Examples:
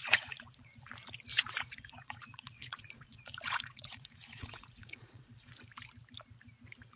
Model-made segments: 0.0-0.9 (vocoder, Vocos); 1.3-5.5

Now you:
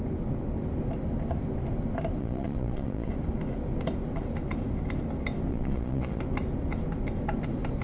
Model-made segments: 2.2-3.1 (vocoder, Vocos); 5.5-6.2

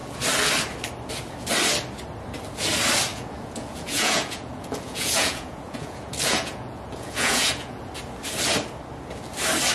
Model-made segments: 3.1-7.9 (vocoder, Vocos)

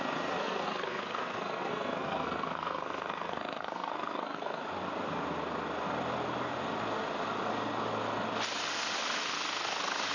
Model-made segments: 0.4-4.6 (codec, SNAC)

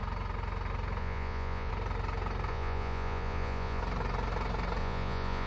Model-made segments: 1.0-1.7 (vocoder, Vocos); 2.5-3.8; 4.8-5.5

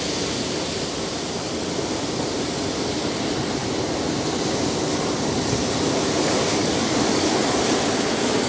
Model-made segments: 6.6-7.4 (codec, DAC)